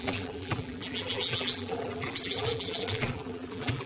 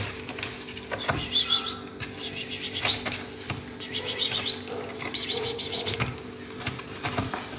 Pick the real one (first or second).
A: second